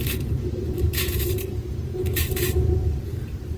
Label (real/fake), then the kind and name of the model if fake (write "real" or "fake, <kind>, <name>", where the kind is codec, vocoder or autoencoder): fake, vocoder, BigVGAN v2